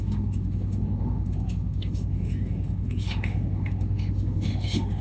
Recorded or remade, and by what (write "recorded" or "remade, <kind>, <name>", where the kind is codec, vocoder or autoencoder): remade, autoencoder, DAC-VAE